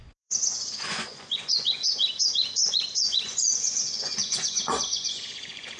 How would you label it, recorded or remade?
remade